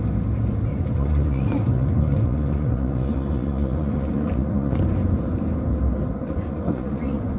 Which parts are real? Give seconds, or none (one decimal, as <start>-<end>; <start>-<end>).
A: 0.0-0.7; 4.8-6.2